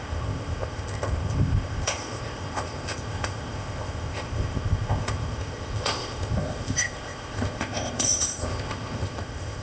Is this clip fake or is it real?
fake